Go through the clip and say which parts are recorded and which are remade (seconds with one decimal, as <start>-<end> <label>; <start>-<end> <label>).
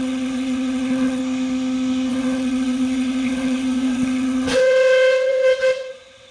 0.0-1.2 remade; 1.2-2.1 recorded; 2.1-6.3 remade